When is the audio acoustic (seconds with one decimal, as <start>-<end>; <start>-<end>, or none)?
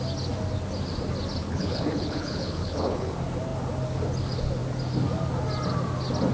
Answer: 0.0-1.4; 3.1-6.3